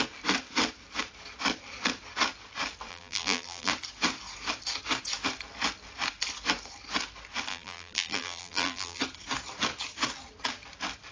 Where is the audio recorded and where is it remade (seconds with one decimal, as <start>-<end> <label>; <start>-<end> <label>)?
0.0-2.9 recorded; 2.9-3.7 remade; 3.7-7.5 recorded; 7.5-9.0 remade; 9.0-11.1 recorded